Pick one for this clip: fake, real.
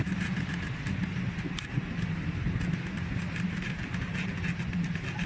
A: real